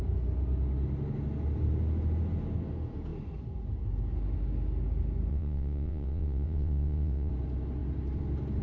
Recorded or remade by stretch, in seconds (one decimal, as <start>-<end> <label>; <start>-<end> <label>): 0.0-5.3 recorded; 5.3-7.3 remade; 7.3-8.6 recorded